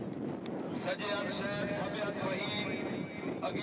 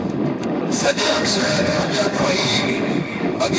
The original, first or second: first